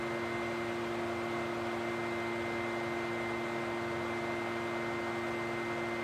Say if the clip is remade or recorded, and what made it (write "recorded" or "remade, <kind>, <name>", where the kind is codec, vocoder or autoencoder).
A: recorded